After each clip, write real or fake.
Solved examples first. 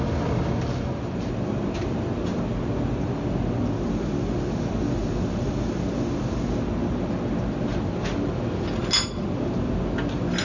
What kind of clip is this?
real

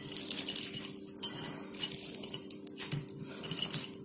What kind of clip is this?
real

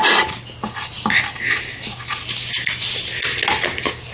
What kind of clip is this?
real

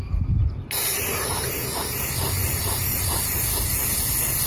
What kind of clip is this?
real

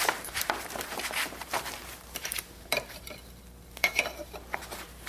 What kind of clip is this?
fake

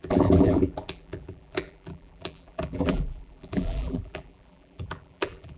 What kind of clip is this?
fake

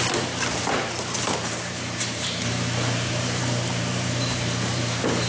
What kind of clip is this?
fake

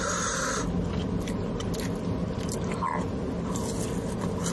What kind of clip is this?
real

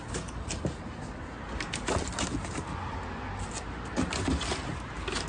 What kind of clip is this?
real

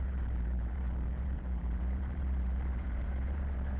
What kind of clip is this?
fake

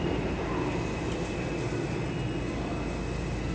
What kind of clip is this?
real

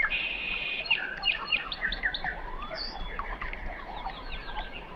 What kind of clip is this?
fake